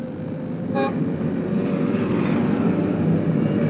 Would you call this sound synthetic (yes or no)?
no